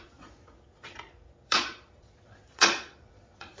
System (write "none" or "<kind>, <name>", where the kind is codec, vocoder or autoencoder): vocoder, Vocos